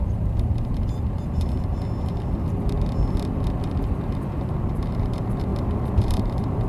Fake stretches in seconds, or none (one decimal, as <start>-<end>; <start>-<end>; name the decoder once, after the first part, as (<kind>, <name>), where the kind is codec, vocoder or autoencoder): 0.0-1.7 (vocoder, BigVGAN v2); 4.6-5.5; 6.0-6.7